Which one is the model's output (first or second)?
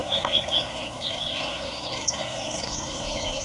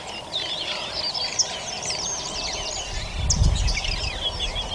first